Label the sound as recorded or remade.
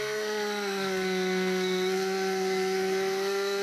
remade